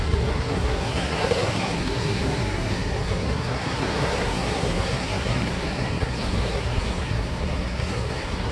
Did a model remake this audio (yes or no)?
yes